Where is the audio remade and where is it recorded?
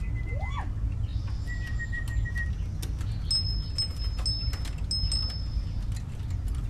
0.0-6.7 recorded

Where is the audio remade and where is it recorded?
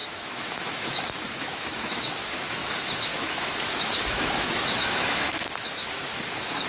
0.0-6.7 remade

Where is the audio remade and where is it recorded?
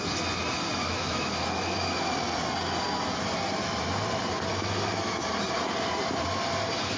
0.0-0.8 recorded; 0.8-2.1 remade; 2.1-4.5 recorded; 4.5-5.2 remade; 5.2-7.0 recorded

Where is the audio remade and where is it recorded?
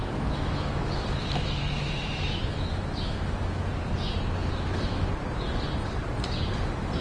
0.0-3.6 remade; 3.6-4.4 recorded; 4.4-5.1 remade; 5.1-7.0 recorded